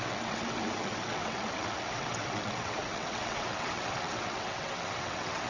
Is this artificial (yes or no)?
yes